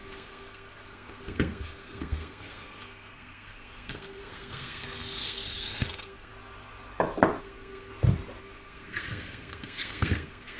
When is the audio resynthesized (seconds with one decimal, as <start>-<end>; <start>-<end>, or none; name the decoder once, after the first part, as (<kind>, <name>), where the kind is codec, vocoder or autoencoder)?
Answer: 0.0-6.3 (codec, SNAC); 7.4-7.9; 8.4-10.6